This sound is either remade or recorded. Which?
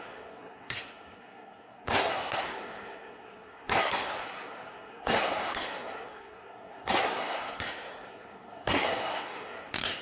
remade